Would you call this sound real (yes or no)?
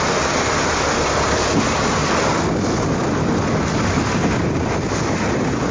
yes